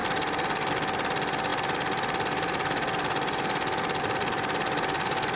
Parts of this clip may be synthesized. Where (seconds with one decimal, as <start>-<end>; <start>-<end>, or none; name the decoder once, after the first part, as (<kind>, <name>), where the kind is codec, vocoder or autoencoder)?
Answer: 0.0-0.7 (vocoder, BigVGAN v2); 1.5-4.0